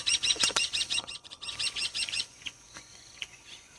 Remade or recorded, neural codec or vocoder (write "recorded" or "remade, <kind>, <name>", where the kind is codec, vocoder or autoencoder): remade, vocoder, Vocos